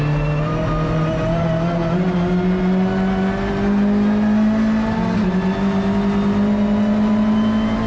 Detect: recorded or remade recorded